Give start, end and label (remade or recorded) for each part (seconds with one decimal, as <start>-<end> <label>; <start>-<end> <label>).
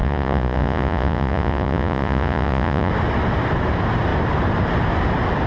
0.0-2.9 remade; 2.9-5.5 recorded